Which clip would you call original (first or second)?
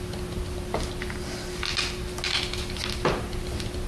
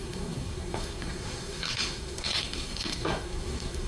first